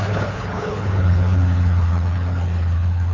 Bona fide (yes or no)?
no